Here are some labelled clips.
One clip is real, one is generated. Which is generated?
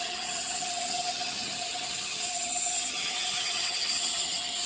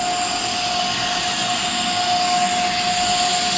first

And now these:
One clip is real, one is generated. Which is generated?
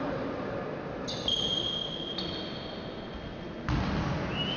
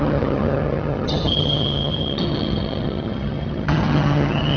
second